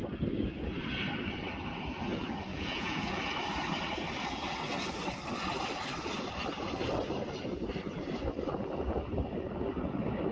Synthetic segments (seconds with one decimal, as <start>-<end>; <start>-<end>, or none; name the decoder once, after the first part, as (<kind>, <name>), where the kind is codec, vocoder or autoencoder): 2.5-3.2 (vocoder, Vocos)